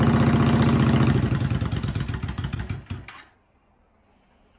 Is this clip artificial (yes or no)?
no